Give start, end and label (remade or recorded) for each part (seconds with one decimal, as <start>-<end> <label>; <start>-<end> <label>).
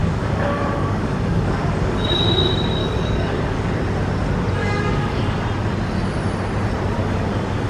0.0-2.2 remade; 2.2-2.8 recorded; 2.8-3.7 remade; 3.7-4.6 recorded; 4.6-5.4 remade; 5.4-7.0 recorded; 7.0-7.7 remade